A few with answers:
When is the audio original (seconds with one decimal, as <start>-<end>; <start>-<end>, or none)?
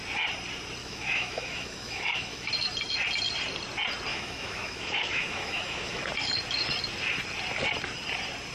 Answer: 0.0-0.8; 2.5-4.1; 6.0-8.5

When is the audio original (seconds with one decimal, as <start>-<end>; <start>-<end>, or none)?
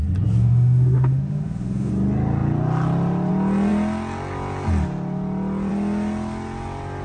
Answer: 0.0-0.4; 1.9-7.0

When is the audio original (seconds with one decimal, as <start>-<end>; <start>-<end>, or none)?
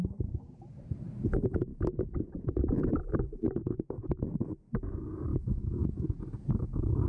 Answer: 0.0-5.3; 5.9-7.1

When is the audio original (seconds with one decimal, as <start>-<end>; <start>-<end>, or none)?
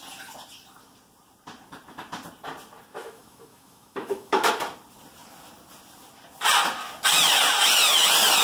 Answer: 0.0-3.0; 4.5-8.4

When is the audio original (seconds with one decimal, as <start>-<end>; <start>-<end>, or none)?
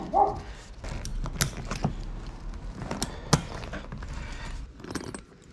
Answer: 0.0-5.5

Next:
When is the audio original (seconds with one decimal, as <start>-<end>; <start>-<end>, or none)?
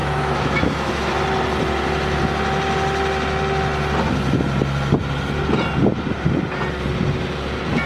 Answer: 1.1-7.9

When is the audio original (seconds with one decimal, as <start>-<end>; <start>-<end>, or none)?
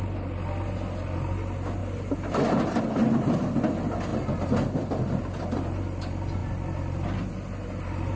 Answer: 0.0-8.2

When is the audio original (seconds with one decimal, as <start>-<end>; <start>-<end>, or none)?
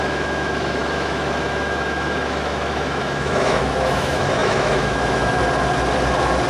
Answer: 5.4-6.5